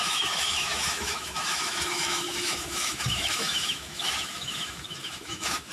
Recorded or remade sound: remade